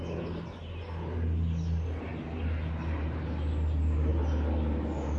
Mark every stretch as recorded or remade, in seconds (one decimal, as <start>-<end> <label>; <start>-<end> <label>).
0.0-5.2 recorded